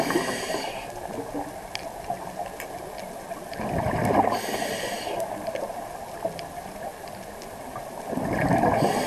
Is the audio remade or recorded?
recorded